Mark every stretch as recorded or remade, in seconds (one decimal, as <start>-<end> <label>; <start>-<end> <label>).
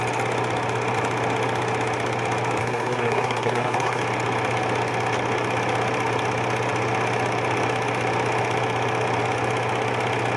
0.0-2.6 recorded; 2.6-4.0 remade; 4.0-10.4 recorded